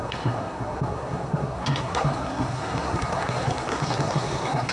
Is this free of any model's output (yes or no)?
no